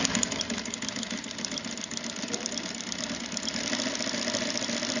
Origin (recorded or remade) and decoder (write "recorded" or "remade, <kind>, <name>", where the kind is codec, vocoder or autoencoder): recorded